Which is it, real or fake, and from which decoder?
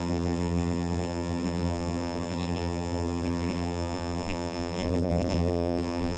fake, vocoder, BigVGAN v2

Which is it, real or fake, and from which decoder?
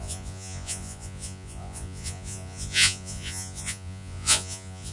fake, vocoder, Vocos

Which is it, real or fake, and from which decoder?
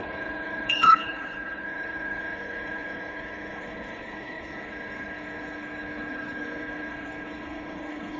fake, codec, HILCodec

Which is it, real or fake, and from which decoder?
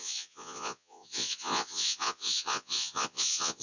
fake, vocoder, Vocos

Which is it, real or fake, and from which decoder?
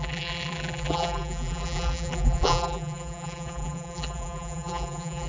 fake, vocoder, BigVGAN v2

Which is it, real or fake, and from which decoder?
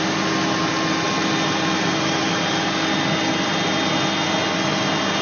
real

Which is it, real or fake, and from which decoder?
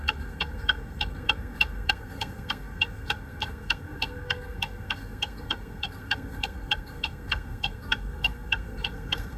fake, codec, SNAC